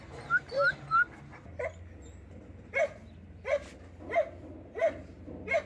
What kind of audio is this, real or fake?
real